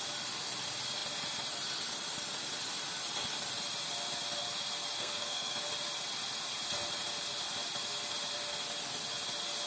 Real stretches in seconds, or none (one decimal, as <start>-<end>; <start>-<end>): 0.0-5.0; 5.6-9.7